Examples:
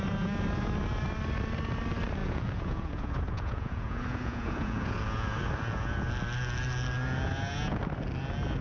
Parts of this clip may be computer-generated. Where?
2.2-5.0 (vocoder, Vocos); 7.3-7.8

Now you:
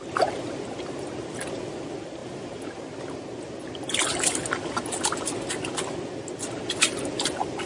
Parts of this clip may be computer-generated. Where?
none

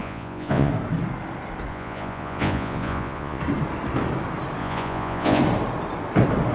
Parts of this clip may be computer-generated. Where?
0.0-0.7 (vocoder, Vocos); 1.7-3.4; 4.6-5.4

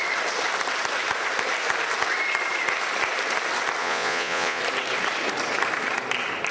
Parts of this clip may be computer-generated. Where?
3.8-4.6 (vocoder, Vocos)

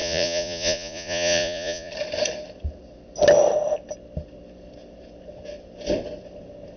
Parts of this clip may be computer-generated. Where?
0.0-1.9 (vocoder, Vocos)